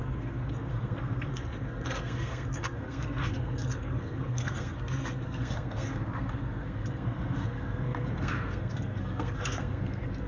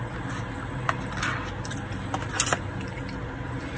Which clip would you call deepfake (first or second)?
first